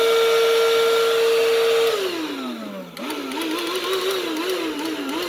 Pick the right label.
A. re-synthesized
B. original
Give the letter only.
B